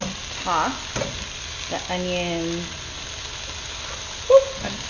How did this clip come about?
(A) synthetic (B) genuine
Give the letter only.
B